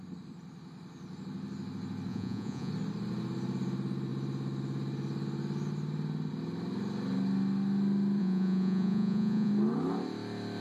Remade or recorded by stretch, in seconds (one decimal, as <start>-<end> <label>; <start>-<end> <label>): 0.0-2.1 recorded; 2.1-2.7 remade; 2.7-8.2 recorded; 8.2-9.5 remade; 9.5-10.6 recorded